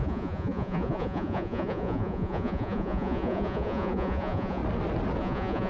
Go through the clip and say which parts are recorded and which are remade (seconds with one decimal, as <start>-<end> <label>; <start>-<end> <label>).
0.0-4.6 remade; 4.6-5.2 recorded; 5.2-5.7 remade